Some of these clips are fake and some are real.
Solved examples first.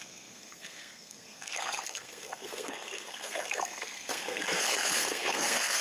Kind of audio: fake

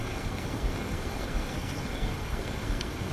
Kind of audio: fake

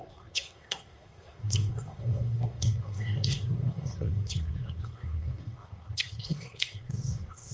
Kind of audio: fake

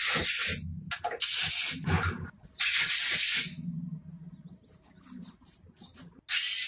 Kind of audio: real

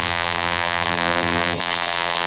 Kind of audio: fake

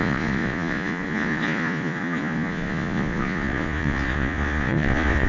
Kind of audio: fake